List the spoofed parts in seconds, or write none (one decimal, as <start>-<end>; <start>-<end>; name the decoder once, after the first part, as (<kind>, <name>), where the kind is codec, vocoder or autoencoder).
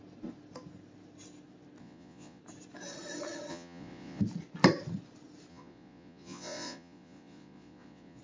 1.8-2.4 (vocoder, Vocos); 3.5-4.2; 5.5-8.2